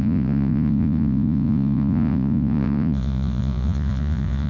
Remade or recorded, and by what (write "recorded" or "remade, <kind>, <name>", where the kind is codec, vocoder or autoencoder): remade, vocoder, Vocos